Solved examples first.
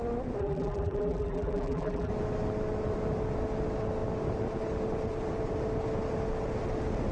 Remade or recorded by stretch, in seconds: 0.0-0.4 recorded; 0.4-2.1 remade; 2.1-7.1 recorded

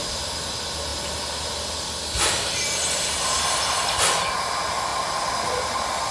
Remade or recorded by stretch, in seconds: 0.0-6.1 recorded